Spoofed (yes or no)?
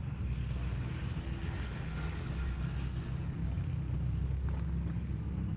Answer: no